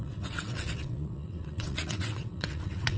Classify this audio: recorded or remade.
remade